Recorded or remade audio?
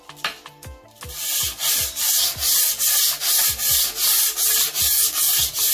recorded